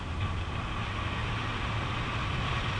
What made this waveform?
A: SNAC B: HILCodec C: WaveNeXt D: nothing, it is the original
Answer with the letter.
D